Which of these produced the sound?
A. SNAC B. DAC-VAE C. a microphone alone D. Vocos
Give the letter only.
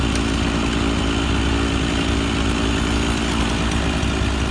C